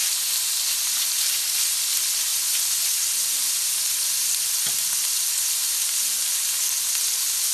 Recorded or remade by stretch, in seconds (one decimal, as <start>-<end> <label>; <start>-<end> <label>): 0.0-7.5 recorded